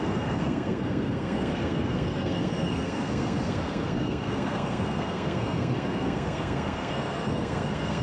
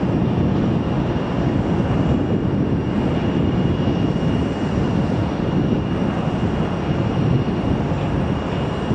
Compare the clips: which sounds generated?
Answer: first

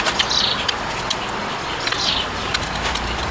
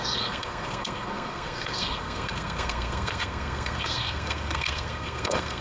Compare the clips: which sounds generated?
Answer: second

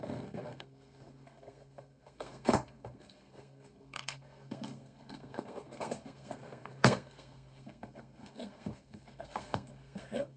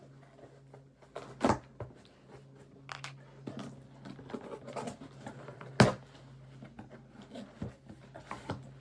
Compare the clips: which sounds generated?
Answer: first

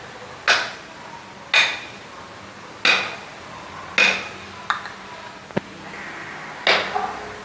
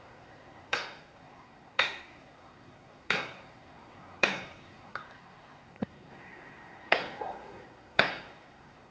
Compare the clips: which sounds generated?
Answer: second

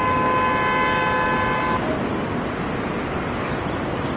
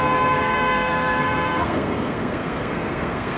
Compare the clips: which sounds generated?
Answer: second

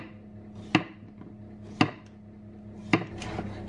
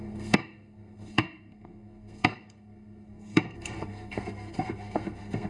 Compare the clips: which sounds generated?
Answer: second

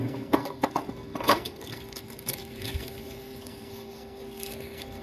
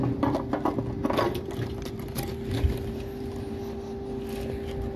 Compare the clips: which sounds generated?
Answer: first